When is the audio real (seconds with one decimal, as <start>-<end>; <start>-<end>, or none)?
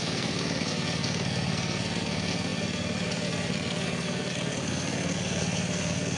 none